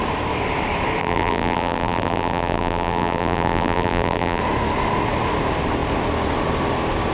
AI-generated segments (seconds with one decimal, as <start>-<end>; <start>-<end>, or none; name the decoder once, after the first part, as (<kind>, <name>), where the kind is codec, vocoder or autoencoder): 1.0-4.4 (vocoder, BigVGAN v2)